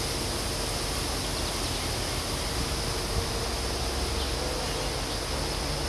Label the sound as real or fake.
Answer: real